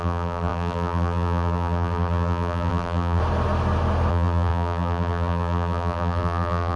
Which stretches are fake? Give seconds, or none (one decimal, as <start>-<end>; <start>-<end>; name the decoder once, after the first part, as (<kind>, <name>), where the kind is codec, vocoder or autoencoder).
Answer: 0.0-3.2 (vocoder, BigVGAN v2); 4.1-6.8